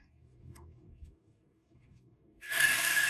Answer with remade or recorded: remade